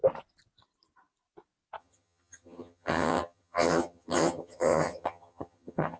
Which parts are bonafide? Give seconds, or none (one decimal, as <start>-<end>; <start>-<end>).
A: 0.0-1.8